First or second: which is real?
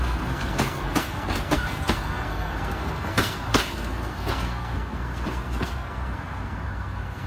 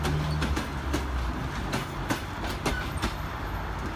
second